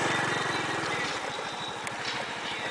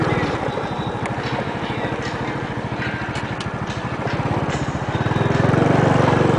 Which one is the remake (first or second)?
first